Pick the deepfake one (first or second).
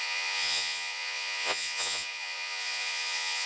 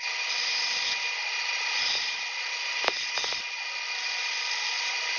first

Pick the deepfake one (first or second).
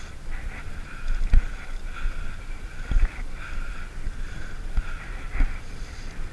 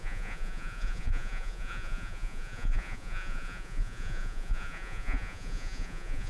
second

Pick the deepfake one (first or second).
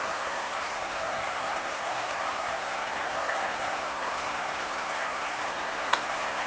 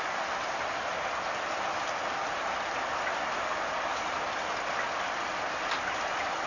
first